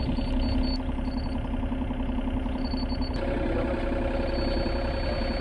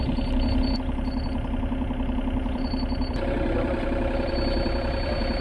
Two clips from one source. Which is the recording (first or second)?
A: first